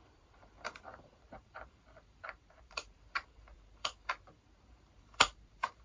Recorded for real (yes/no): no